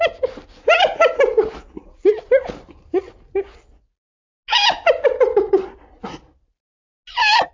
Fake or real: real